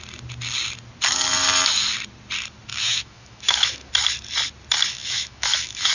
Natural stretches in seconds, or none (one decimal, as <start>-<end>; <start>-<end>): 0.0-2.7; 3.9-4.9